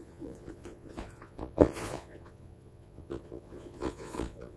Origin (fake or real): fake